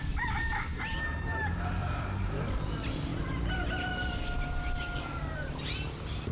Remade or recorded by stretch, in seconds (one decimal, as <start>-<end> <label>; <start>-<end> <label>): 0.0-0.7 recorded; 0.7-2.6 remade; 2.6-3.1 recorded; 3.1-3.9 remade; 3.9-6.3 recorded